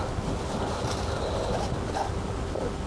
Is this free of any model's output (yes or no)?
yes